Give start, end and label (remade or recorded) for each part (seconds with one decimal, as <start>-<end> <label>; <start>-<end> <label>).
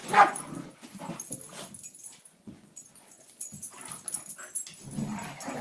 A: 0.0-0.5 remade; 0.5-2.1 recorded; 2.1-3.5 remade; 3.5-5.6 recorded